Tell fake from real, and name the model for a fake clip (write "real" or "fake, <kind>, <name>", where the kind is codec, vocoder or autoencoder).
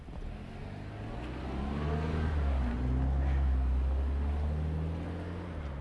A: real